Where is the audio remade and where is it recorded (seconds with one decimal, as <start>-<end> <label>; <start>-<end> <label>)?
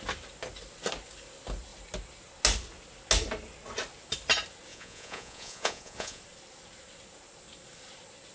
0.0-4.7 recorded; 4.7-6.2 remade; 6.2-8.3 recorded